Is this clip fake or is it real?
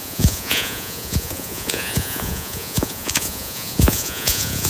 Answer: fake